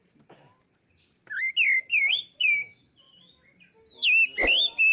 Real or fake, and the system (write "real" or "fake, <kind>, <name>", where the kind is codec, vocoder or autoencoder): real